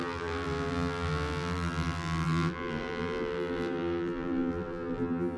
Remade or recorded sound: remade